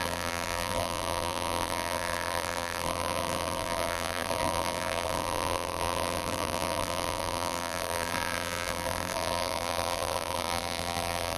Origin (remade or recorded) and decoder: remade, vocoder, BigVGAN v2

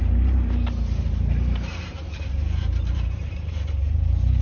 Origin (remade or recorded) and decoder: remade, vocoder, BigVGAN v2